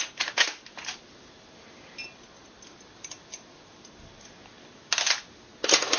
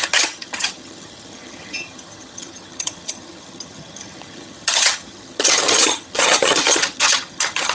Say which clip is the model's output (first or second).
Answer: second